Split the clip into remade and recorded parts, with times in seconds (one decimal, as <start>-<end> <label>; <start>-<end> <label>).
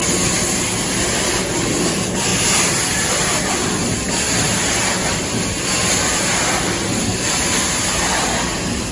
0.0-8.9 recorded